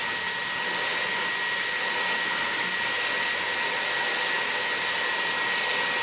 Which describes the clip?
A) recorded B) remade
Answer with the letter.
A